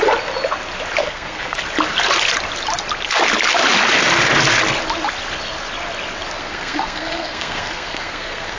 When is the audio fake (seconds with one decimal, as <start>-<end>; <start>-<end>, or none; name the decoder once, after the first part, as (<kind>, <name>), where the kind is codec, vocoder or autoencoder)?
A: 1.0-1.6 (codec, SNAC); 6.4-8.6